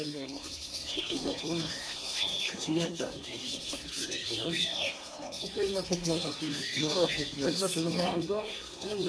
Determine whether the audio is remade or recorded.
remade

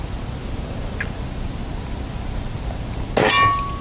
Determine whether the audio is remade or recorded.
recorded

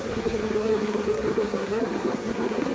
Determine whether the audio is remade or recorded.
remade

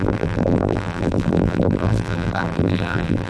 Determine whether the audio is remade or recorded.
remade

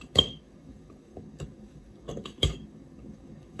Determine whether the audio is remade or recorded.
remade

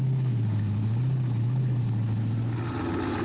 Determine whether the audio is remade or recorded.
recorded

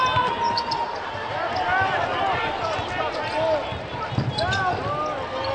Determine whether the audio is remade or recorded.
recorded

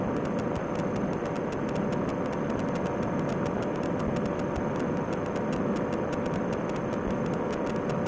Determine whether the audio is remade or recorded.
recorded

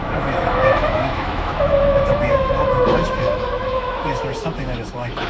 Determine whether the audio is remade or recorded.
remade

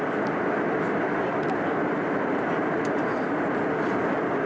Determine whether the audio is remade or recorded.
recorded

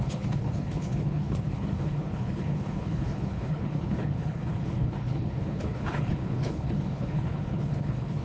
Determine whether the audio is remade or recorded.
remade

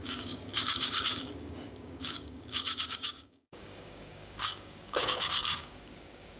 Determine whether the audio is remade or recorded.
remade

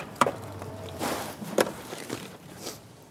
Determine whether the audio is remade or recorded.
remade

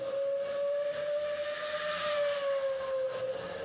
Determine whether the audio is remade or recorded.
recorded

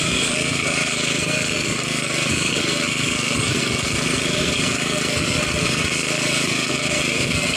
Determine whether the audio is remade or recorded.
remade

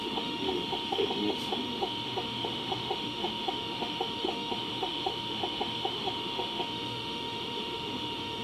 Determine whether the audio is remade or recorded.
remade